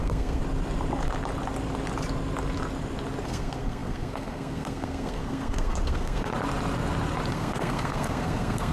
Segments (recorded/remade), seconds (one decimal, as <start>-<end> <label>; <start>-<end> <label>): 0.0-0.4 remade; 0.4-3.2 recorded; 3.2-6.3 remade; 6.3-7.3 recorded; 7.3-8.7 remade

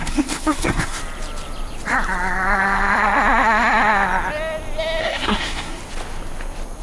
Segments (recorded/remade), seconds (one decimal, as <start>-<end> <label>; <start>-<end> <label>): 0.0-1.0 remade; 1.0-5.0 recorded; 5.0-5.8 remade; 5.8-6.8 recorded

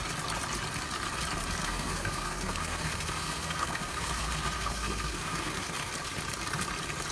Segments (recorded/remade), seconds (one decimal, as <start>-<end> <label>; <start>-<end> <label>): 0.0-1.6 recorded; 1.6-5.9 remade; 5.9-7.1 recorded

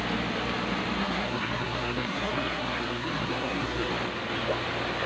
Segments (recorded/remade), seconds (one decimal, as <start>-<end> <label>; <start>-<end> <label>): 0.0-1.0 recorded; 1.0-3.9 remade; 3.9-5.1 recorded

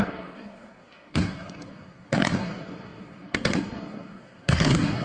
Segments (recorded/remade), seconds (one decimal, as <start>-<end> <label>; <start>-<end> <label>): 0.0-5.0 remade